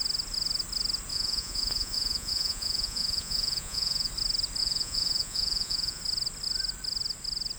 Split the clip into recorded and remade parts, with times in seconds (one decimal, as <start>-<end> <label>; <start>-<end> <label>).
0.0-1.1 recorded; 1.1-4.1 remade; 4.1-4.6 recorded; 4.6-6.0 remade; 6.0-7.6 recorded